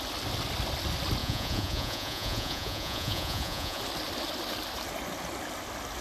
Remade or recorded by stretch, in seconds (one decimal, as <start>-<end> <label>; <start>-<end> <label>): 0.0-1.2 recorded; 1.2-3.8 remade; 3.8-6.0 recorded